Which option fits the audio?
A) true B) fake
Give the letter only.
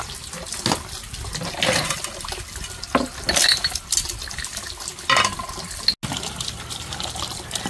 A